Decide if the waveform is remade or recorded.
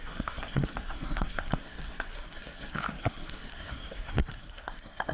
remade